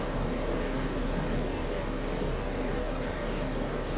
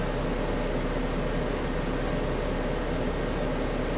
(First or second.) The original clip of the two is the second